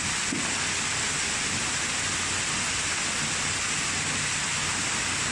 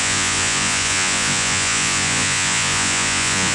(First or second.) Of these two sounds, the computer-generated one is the second